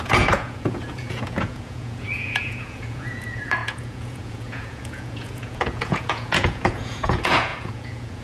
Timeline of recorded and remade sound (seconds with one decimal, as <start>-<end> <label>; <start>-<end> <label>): 0.0-8.2 remade